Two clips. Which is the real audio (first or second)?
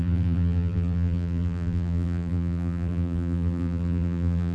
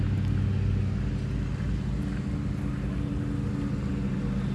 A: second